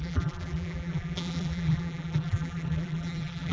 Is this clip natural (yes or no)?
no